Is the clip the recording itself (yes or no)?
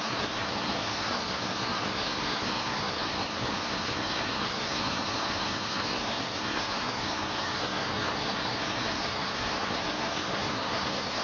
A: no